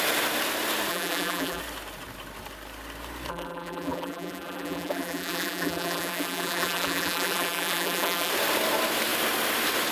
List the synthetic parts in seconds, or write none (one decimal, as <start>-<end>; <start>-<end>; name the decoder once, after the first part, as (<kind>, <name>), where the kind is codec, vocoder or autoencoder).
0.9-1.6 (vocoder, BigVGAN v2); 3.3-8.3